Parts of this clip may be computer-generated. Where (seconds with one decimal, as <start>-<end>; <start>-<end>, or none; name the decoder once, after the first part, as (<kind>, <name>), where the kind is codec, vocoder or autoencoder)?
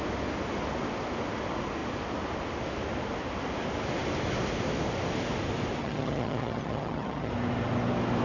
5.8-7.3 (vocoder, HiFi-GAN)